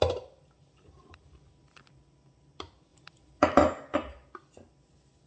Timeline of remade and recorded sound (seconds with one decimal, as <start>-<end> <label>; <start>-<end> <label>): 0.0-1.9 remade; 1.9-2.9 recorded; 2.9-3.6 remade; 3.6-5.3 recorded